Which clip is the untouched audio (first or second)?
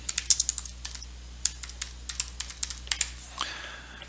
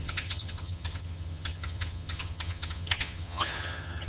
first